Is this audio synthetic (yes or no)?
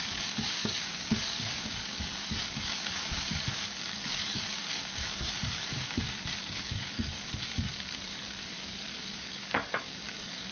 yes